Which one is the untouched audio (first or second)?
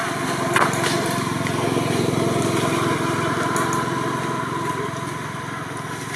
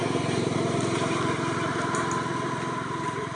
first